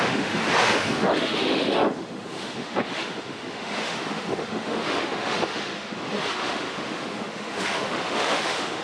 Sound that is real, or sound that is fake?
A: fake